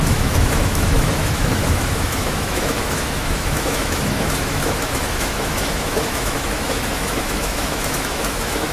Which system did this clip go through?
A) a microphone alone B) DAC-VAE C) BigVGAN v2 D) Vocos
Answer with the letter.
B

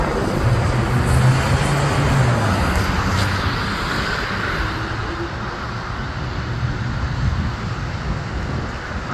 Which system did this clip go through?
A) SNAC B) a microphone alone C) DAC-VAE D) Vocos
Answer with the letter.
B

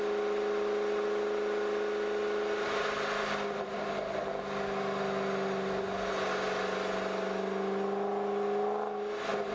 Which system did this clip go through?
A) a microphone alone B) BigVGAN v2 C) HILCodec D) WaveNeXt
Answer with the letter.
A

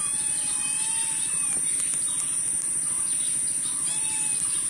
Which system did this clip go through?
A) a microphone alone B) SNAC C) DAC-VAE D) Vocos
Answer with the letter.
A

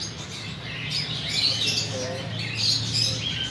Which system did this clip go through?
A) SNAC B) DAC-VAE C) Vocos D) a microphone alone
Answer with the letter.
D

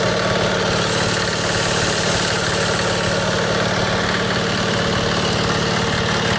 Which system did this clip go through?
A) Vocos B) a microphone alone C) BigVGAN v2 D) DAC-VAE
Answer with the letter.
B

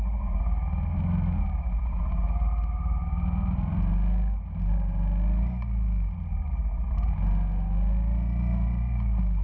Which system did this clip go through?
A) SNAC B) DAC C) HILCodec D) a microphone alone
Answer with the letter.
D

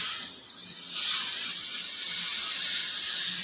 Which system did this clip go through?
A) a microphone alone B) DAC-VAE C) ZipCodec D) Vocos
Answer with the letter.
A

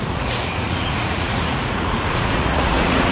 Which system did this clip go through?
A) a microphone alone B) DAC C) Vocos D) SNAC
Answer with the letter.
C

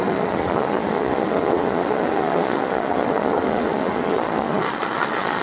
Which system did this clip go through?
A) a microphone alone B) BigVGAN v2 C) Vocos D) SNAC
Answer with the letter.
C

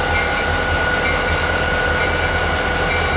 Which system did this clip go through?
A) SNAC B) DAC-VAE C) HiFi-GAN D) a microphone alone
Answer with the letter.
D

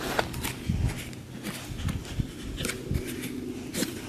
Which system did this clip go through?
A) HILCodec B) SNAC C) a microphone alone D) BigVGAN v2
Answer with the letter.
C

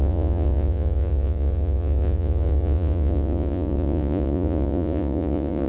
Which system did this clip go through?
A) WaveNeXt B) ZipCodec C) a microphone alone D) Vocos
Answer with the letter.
D